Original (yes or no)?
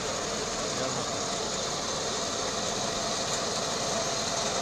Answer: yes